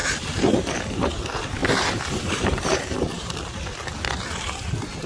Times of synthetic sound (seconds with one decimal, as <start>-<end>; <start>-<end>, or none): 0.0-0.7; 1.6-3.3